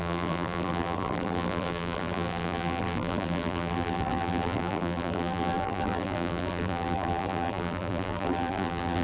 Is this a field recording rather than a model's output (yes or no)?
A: no